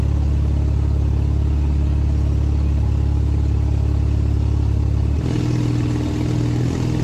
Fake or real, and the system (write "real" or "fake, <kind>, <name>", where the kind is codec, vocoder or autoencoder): real